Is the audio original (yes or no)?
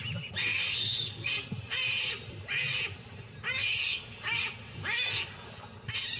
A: yes